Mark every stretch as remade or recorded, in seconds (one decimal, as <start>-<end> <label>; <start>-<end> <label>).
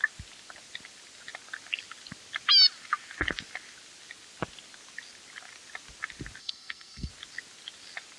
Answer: 0.0-6.4 recorded; 6.4-7.1 remade; 7.1-8.2 recorded